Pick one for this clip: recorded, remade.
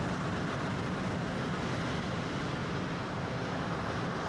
recorded